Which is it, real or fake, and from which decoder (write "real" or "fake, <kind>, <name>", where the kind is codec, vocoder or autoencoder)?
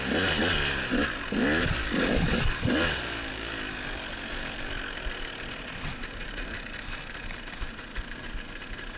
real